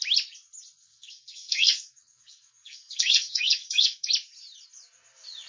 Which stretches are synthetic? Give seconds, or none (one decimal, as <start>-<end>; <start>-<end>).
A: 0.8-4.1

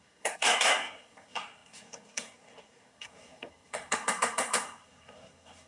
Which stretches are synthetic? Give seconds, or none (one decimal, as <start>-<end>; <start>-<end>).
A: 0.0-5.7

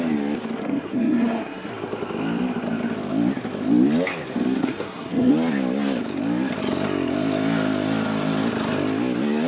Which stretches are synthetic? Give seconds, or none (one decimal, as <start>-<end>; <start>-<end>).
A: 0.6-1.7; 4.6-5.3

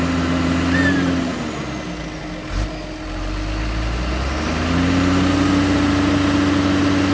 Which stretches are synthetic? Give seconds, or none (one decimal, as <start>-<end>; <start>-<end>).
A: none

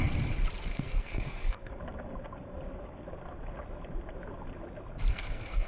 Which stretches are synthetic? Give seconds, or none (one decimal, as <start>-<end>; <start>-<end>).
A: 0.7-1.8; 5.1-5.7

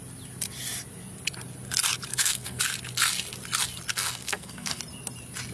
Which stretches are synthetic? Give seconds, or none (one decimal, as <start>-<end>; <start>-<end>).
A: 2.1-2.6; 3.9-4.8